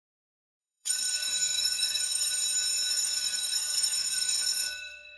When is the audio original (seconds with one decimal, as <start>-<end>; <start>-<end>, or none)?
0.0-0.6; 2.3-2.9

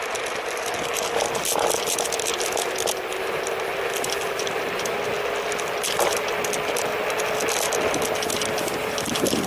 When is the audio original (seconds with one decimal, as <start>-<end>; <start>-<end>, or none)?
0.0-9.5